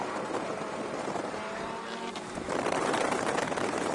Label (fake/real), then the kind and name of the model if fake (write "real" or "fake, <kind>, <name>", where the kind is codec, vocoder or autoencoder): fake, vocoder, BigVGAN v2